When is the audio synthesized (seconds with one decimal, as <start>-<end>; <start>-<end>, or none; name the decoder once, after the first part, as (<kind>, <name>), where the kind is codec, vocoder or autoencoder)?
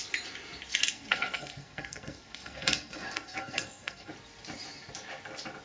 0.7-4.1 (codec, SNAC)